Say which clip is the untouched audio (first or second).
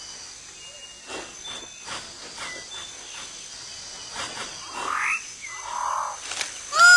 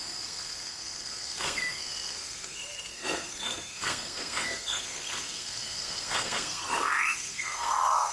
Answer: first